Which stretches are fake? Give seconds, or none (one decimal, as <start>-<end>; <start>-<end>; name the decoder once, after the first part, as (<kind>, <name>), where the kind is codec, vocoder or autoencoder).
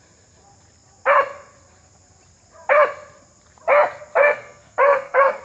4.2-5.4 (codec, SNAC)